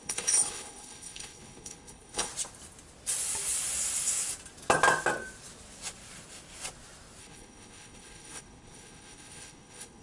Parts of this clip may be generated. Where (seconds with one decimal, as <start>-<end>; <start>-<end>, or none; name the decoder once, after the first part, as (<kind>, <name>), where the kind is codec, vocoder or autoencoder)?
0.0-2.3 (codec, HILCodec); 7.2-10.0